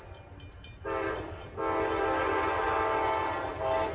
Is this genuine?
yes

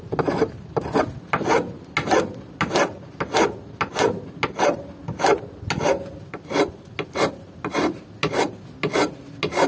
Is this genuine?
yes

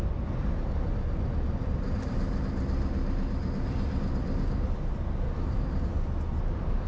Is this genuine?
yes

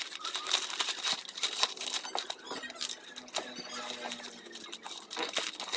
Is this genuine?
yes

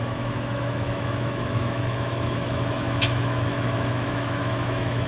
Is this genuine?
no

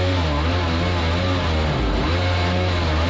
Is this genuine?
yes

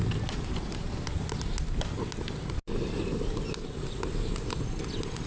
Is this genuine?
yes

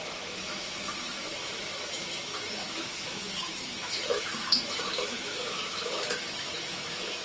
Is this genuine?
no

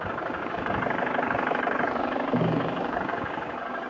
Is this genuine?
no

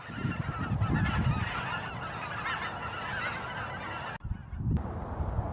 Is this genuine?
yes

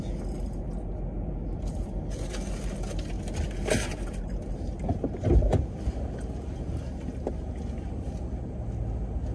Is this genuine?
yes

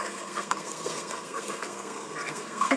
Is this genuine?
no